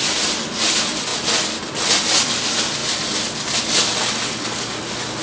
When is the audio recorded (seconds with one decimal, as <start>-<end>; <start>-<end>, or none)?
0.0-5.2